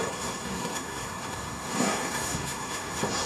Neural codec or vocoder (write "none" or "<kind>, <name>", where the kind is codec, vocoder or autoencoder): codec, SNAC